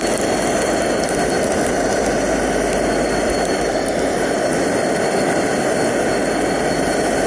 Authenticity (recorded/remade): recorded